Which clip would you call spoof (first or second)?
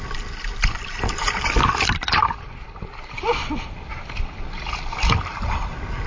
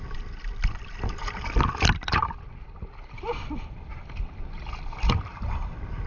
second